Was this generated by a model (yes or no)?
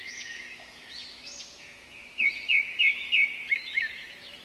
yes